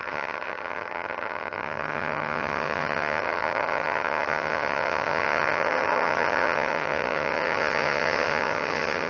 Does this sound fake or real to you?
fake